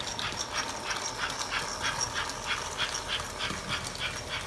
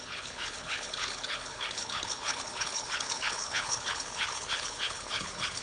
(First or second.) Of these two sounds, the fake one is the second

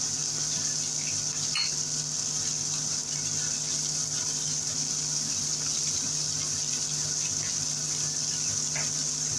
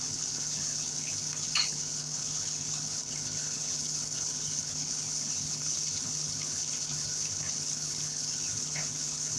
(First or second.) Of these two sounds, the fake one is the second